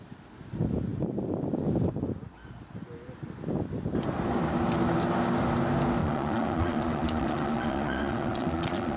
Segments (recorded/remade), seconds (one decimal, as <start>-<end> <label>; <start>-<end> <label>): 0.0-6.0 recorded; 6.0-9.0 remade

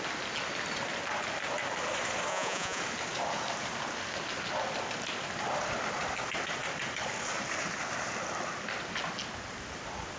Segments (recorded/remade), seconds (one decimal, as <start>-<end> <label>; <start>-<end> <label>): 0.0-2.3 recorded; 2.3-2.8 remade; 2.8-10.2 recorded

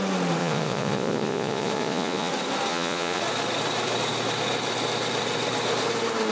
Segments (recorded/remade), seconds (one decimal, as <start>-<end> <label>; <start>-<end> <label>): 0.0-0.4 recorded; 0.4-2.3 remade; 2.3-2.7 recorded; 2.7-3.2 remade; 3.2-6.3 recorded

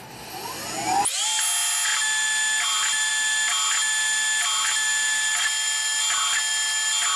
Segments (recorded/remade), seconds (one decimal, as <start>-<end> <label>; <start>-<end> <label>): 0.0-7.2 recorded

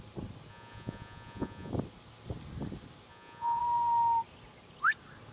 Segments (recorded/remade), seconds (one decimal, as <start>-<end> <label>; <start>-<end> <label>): 0.0-0.5 recorded; 0.5-1.7 remade; 1.7-3.1 recorded; 3.1-3.6 remade; 3.6-5.3 recorded

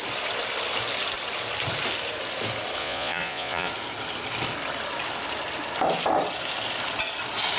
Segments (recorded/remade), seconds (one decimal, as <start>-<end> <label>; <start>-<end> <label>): 0.0-2.8 recorded; 2.8-3.7 remade; 3.7-7.6 recorded